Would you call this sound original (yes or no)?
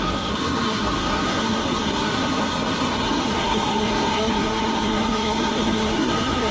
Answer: no